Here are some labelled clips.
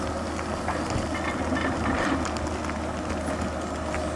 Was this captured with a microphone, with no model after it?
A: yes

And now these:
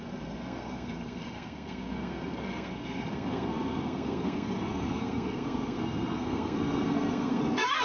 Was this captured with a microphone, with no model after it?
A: no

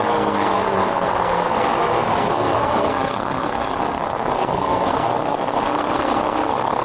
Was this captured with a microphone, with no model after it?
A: no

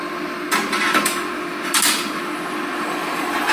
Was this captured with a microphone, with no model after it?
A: yes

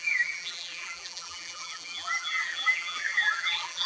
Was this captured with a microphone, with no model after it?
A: no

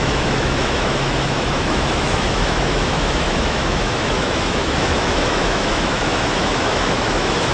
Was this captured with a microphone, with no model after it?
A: no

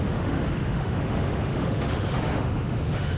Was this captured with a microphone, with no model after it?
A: no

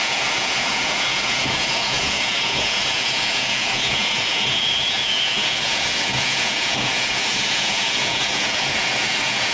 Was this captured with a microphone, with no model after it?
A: no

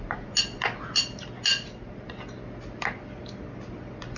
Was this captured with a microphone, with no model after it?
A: yes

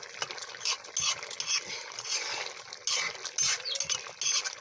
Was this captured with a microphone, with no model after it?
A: yes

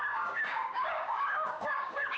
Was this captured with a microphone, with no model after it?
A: no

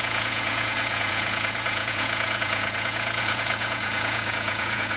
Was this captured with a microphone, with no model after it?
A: no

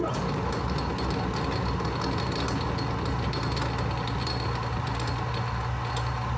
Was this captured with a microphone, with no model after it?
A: yes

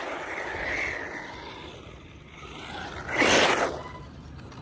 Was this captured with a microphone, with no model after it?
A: yes